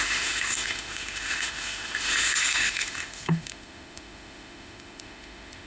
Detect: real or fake fake